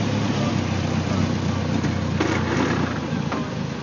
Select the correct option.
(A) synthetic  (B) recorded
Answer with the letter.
B